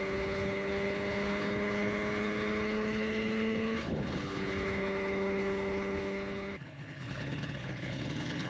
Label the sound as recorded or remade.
remade